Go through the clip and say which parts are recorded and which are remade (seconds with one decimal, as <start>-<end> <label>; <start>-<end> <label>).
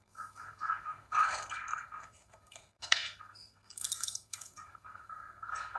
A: 0.0-5.8 remade